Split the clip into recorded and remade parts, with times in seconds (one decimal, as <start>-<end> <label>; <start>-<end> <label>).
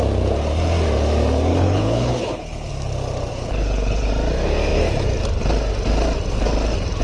0.0-1.5 recorded; 1.5-2.7 remade; 2.7-3.3 recorded; 3.3-4.1 remade; 4.1-7.0 recorded